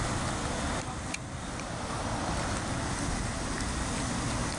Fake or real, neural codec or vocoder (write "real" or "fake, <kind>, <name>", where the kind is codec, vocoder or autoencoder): real